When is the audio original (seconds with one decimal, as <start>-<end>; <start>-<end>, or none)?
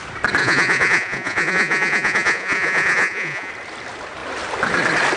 0.0-0.4; 3.5-5.2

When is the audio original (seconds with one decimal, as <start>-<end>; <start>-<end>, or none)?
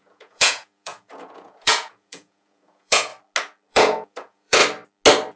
3.1-3.7; 4.6-5.4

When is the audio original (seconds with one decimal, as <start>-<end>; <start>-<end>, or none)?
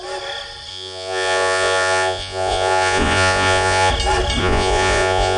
0.0-0.7; 3.9-4.4